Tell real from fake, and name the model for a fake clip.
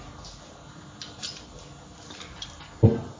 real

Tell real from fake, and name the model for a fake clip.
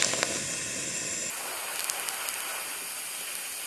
real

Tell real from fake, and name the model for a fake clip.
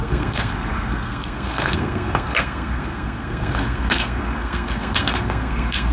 fake, codec, SNAC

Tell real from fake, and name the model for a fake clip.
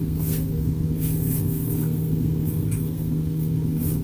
fake, codec, SNAC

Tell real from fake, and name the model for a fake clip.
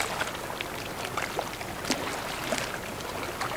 real